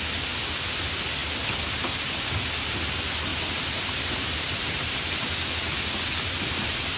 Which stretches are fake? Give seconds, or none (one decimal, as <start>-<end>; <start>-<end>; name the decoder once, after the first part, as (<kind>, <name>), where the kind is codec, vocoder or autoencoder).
3.3-5.3 (vocoder, BigVGAN v2)